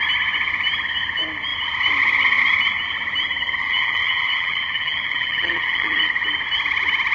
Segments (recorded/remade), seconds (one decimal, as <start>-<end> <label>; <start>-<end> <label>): 0.0-3.6 recorded; 3.6-6.1 remade; 6.1-7.1 recorded